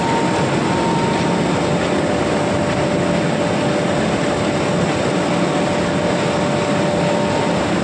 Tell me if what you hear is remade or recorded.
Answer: recorded